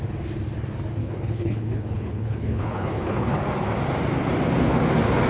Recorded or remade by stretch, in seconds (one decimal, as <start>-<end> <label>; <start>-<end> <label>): 0.0-1.0 recorded; 1.0-3.4 remade; 3.4-5.3 recorded